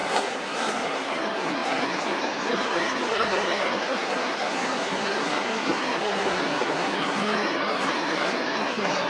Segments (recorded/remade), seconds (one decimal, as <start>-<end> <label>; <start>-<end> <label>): 0.0-9.1 remade